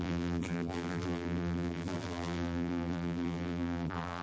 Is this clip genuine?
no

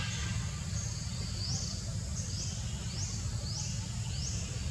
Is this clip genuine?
yes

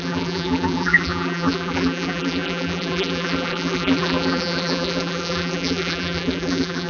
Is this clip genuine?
no